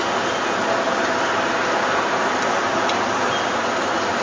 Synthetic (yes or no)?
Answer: no